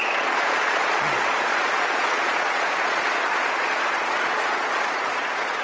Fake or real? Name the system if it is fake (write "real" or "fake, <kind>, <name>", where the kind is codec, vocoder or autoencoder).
fake, vocoder, Vocos